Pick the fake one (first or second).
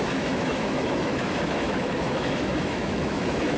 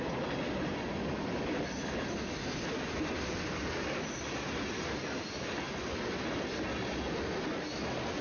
first